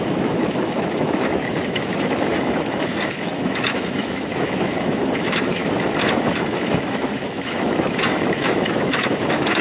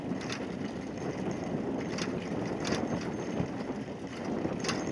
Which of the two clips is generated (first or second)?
first